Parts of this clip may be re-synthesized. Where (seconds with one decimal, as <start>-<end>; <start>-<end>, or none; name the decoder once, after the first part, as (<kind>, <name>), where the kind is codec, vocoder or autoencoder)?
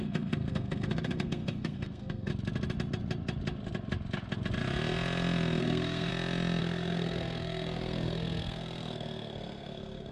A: 0.0-2.3 (codec, SNAC); 5.6-6.1; 6.6-10.1